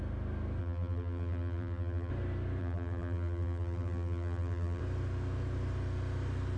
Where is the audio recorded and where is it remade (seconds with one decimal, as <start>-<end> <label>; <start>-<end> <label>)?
0.0-0.6 recorded; 0.6-2.1 remade; 2.1-2.6 recorded; 2.6-4.8 remade; 4.8-6.6 recorded